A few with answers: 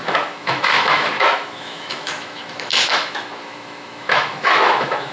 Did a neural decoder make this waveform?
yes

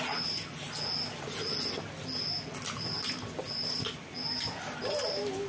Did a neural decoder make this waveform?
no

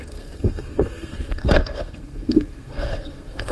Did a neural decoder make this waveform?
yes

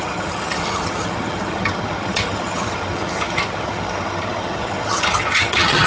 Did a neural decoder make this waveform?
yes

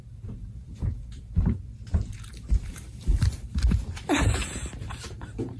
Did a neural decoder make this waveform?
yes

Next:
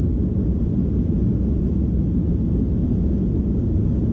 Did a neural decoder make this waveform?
no